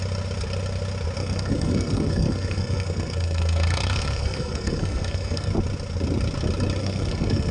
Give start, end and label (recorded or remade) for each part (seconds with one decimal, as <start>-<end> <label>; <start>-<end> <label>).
0.0-1.2 recorded; 1.2-5.5 remade; 5.5-6.8 recorded; 6.8-7.5 remade